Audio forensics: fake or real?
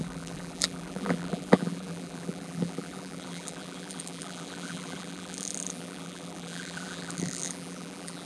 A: fake